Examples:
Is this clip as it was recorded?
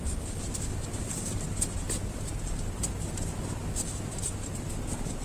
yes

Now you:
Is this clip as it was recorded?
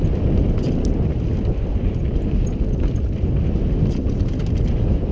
yes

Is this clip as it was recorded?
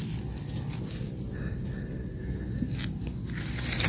yes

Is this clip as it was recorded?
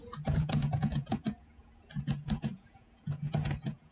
no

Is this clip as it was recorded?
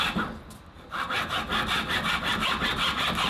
yes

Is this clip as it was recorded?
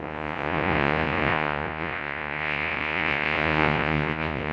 no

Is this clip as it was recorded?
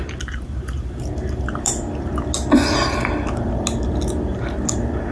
yes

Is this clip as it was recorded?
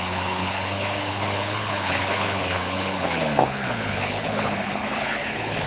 no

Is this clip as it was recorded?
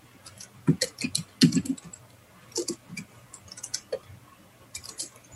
yes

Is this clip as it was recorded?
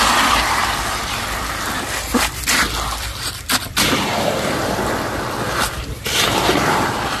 no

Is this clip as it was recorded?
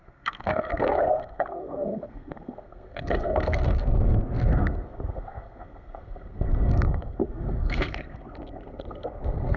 no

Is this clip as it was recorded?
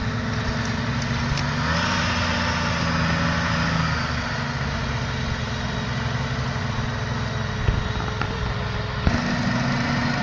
yes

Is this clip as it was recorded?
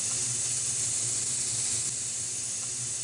yes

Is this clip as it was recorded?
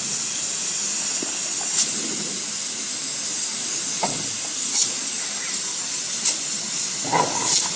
yes